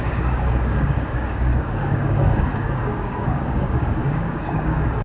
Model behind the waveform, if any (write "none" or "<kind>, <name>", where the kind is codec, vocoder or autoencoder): codec, DAC